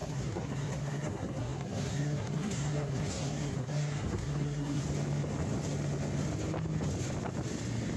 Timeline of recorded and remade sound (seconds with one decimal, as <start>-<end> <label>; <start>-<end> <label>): 0.0-4.8 remade; 4.8-8.0 recorded